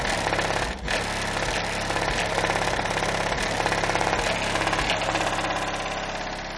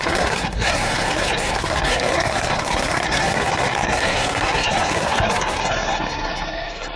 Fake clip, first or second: second